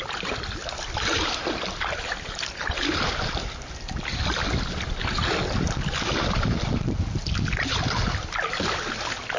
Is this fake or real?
real